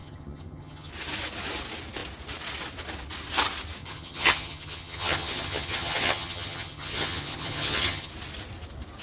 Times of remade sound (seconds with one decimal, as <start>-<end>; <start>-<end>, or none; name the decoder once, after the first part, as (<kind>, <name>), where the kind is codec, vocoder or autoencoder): 0.0-0.9 (vocoder, HiFi-GAN); 3.8-8.1